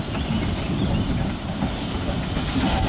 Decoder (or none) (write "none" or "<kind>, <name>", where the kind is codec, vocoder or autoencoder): none